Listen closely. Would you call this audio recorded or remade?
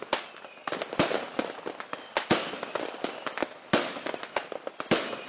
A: recorded